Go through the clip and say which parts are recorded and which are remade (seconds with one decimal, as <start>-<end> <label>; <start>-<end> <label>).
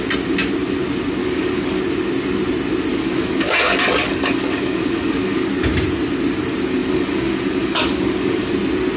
0.0-1.2 recorded; 1.2-1.8 remade; 1.8-2.9 recorded; 2.9-5.5 remade; 5.5-6.8 recorded; 6.8-8.5 remade; 8.5-9.0 recorded